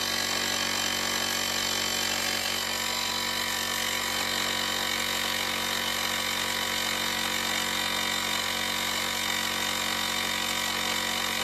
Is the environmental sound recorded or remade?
recorded